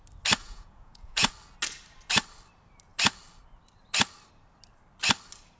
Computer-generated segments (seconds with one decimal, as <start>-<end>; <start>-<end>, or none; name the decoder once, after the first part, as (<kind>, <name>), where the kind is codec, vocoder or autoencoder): 0.4-1.3 (vocoder, Vocos)